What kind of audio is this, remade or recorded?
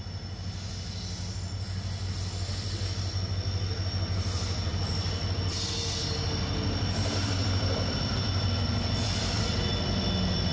recorded